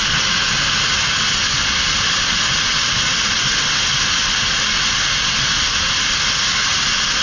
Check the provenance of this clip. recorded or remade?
recorded